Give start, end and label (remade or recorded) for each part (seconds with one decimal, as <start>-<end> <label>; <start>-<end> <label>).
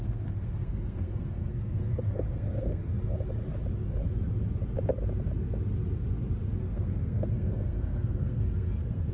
0.0-2.8 remade; 2.8-6.6 recorded; 6.6-9.1 remade